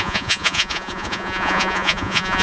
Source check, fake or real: fake